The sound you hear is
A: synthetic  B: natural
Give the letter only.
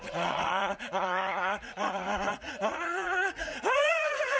A